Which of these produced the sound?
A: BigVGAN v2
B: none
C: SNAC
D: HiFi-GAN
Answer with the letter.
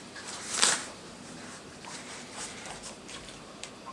A